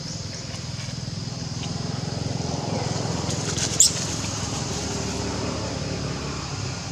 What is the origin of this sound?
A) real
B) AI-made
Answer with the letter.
A